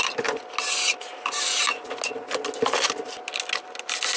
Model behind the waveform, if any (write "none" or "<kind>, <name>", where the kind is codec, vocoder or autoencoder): none